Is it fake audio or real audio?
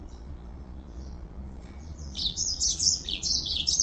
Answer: fake